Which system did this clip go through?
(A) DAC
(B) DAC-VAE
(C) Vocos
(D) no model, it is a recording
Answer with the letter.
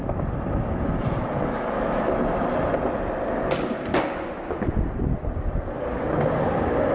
D